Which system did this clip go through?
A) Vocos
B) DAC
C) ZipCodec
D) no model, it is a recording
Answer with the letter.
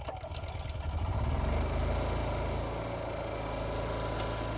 D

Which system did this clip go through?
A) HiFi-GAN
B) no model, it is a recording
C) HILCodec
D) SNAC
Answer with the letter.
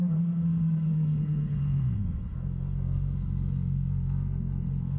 D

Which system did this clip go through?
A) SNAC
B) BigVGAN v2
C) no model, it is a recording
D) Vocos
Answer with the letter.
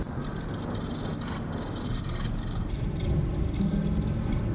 C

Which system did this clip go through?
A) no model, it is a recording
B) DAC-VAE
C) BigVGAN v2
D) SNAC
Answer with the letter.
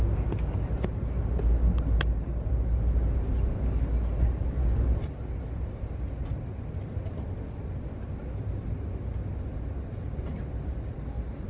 A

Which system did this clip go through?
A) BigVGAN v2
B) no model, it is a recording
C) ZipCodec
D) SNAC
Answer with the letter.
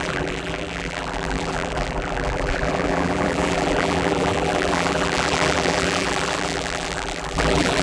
A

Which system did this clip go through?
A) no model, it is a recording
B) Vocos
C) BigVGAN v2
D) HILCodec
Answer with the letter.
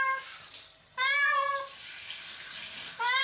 A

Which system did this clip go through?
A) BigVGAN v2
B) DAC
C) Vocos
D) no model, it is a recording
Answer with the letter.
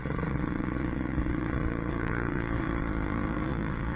C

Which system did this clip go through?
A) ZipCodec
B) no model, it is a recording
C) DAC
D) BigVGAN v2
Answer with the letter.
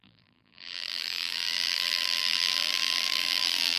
D